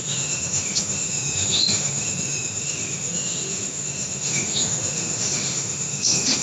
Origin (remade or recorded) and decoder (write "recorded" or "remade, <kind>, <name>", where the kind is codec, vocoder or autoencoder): remade, autoencoder, DAC-VAE